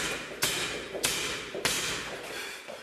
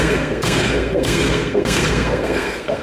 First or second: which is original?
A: first